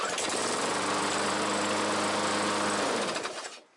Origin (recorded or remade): recorded